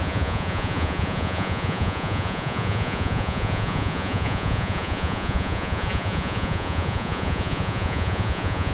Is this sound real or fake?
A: fake